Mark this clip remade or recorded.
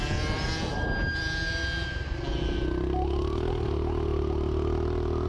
recorded